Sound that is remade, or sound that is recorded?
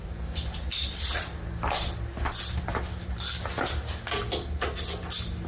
recorded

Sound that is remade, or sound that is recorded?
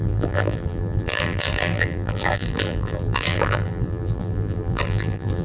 remade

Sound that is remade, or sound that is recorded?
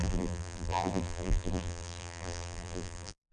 remade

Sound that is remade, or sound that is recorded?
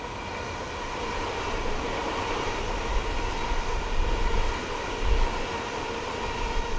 recorded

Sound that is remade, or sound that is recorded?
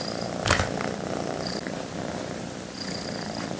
remade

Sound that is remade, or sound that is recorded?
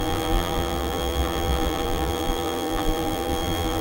remade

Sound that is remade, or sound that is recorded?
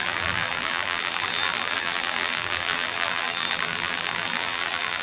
remade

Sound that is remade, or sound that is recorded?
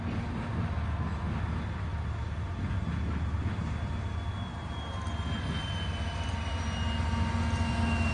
recorded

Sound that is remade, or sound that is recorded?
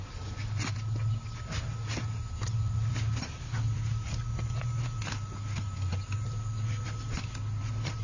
recorded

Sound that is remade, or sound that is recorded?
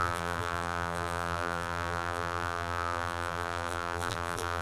remade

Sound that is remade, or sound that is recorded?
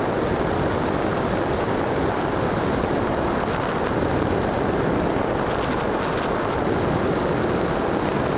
recorded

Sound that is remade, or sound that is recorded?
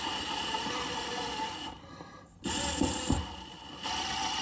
remade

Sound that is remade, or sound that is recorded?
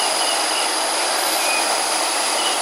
recorded